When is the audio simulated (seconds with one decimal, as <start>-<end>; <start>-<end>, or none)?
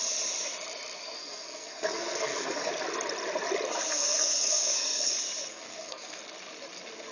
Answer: 1.2-2.7; 3.9-5.1; 5.5-6.2